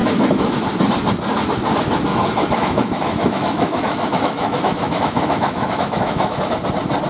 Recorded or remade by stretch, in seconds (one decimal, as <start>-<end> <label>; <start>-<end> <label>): 0.0-0.6 remade; 0.6-2.1 recorded; 2.1-6.4 remade; 6.4-7.1 recorded